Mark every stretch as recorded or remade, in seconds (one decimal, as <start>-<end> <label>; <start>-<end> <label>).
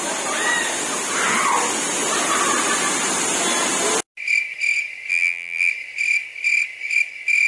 0.0-5.1 recorded; 5.1-5.7 remade; 5.7-7.5 recorded